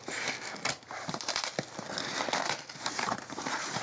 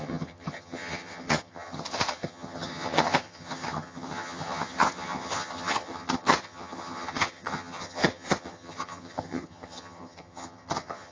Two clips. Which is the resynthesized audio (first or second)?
second